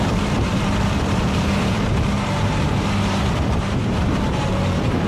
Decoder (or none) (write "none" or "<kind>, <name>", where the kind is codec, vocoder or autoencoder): vocoder, BigVGAN v2